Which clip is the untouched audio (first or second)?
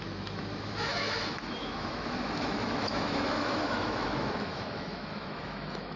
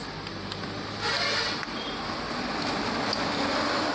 second